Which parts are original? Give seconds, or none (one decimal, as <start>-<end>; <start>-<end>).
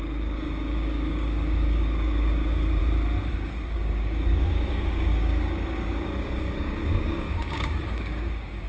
2.8-3.3